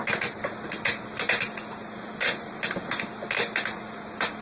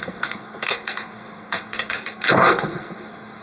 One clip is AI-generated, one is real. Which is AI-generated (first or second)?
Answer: second